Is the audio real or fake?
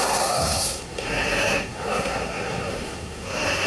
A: fake